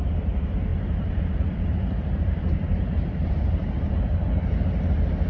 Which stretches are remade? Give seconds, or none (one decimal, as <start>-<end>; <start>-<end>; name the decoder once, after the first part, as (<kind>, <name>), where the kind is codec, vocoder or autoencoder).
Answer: 0.7-3.9 (vocoder, BigVGAN v2)